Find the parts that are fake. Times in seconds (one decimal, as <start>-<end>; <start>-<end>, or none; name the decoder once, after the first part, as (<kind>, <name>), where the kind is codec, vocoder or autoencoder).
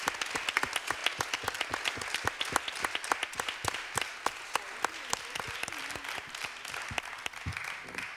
none